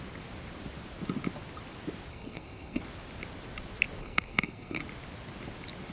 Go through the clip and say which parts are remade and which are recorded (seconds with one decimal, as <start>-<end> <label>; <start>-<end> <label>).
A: 0.0-2.1 recorded; 2.1-2.8 remade; 2.8-4.0 recorded; 4.0-4.8 remade; 4.8-5.9 recorded